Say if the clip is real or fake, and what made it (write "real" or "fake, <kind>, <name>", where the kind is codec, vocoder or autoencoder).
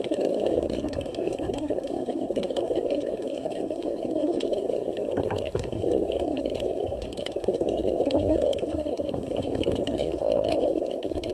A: fake, codec, SNAC